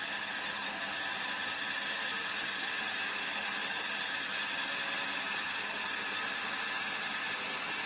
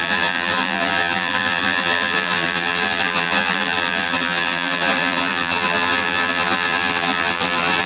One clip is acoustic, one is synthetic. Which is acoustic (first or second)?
first